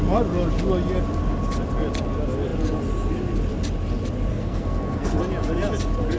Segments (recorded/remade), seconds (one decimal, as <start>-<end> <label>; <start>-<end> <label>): 0.0-4.3 recorded; 4.3-5.2 remade; 5.2-6.2 recorded